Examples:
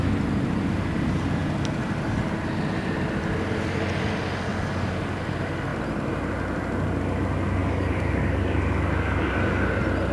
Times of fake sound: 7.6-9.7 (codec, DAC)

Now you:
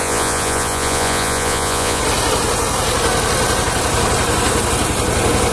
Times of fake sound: 0.0-2.0 (vocoder, Vocos)

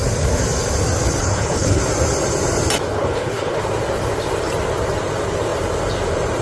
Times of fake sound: 1.2-1.8 (codec, HILCodec); 2.9-3.6

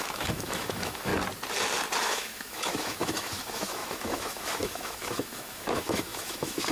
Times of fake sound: 0.0-1.1 (autoencoder, DAC-VAE); 2.0-6.7

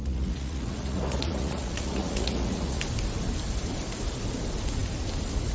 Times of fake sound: 0.0-2.8 (vocoder, Vocos)

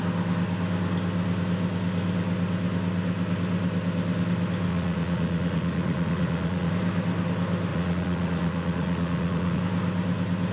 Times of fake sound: 4.7-6.7 (vocoder, Vocos); 7.7-9.6